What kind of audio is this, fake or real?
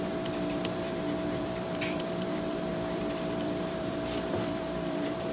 fake